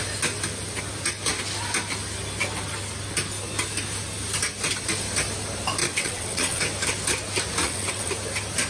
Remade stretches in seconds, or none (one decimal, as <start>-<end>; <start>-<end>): 5.8-6.6; 7.6-8.1